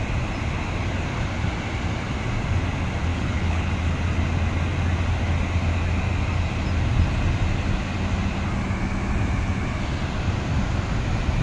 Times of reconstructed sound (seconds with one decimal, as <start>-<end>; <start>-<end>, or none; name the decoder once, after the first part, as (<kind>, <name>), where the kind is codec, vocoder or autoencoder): 3.1-3.7 (codec, HILCodec)